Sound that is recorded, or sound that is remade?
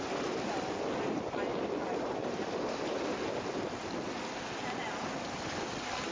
recorded